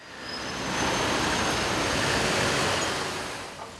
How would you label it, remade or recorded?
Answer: recorded